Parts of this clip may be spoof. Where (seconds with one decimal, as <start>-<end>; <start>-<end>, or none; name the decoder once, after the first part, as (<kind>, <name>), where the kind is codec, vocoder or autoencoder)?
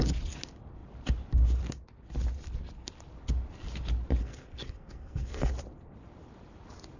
4.2-5.5 (codec, SNAC)